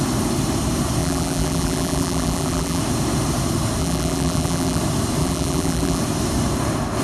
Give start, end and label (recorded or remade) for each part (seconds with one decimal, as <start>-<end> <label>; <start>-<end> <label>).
0.0-1.0 recorded; 1.0-2.8 remade; 2.8-3.8 recorded; 3.8-4.8 remade; 4.8-5.2 recorded; 5.2-6.0 remade; 6.0-7.0 recorded